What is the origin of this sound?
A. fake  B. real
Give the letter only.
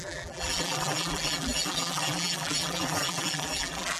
A